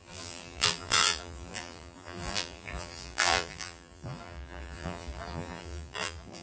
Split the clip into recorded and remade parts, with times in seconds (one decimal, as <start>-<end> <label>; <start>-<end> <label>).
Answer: 0.0-6.4 remade